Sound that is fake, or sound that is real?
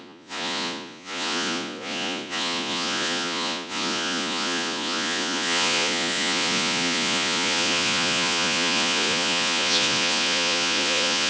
fake